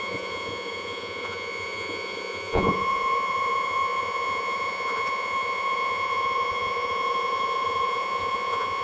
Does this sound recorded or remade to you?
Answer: remade